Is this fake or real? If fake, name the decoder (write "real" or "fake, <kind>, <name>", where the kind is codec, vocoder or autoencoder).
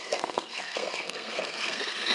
fake, codec, SNAC